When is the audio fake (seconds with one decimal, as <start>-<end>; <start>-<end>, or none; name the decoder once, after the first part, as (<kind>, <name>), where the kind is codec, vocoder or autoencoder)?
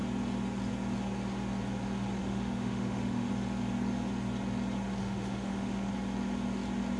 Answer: 2.2-3.3 (autoencoder, DAC-VAE); 5.0-5.9